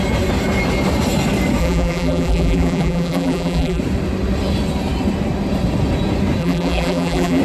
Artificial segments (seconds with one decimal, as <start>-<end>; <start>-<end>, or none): 1.6-3.8; 6.4-7.4